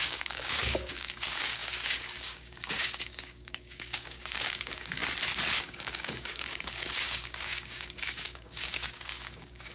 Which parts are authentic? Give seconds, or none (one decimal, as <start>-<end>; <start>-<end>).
5.0-5.6